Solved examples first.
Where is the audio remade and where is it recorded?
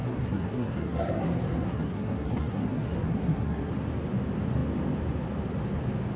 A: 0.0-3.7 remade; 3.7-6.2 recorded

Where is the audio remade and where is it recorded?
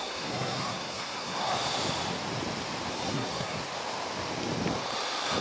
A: 0.0-1.5 remade; 1.5-2.9 recorded; 2.9-3.6 remade; 3.6-5.4 recorded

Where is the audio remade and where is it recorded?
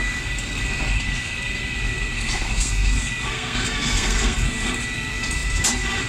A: 0.0-6.1 remade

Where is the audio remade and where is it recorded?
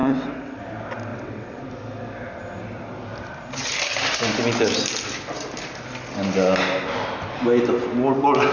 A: 0.0-0.6 remade; 0.6-1.1 recorded; 1.1-1.6 remade; 1.6-8.5 recorded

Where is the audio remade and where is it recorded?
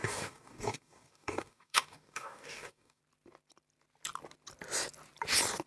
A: 0.0-3.0 remade; 3.0-5.7 recorded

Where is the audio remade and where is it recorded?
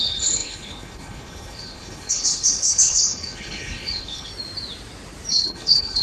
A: 0.0-4.3 remade; 4.3-5.3 recorded; 5.3-6.0 remade